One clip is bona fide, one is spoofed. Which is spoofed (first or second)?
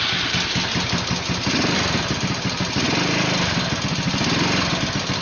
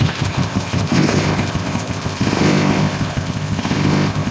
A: second